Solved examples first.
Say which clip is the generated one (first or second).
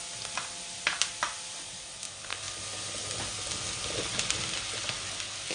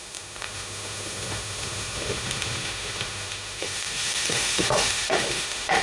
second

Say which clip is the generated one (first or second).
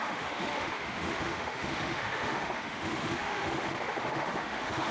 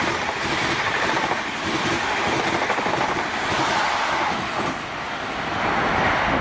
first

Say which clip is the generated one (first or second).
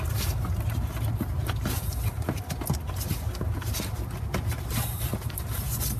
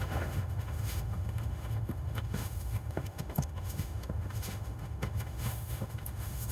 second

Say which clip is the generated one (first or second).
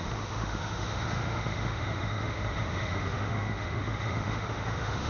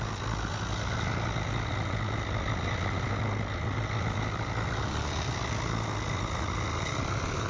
first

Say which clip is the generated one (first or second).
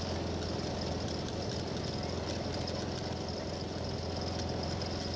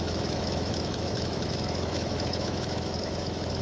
second